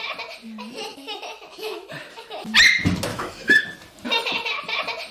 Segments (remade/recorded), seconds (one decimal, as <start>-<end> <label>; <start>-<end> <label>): 0.0-0.9 recorded; 0.9-1.9 remade; 1.9-3.1 recorded; 3.1-3.6 remade; 3.6-5.1 recorded